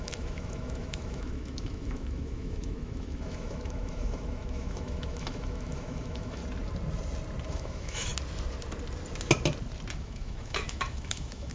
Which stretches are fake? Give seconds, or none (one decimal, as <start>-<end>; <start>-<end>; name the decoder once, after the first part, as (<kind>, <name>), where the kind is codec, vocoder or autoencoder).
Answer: 0.0-6.4 (autoencoder, DAC-VAE); 7.5-8.1; 9.9-11.5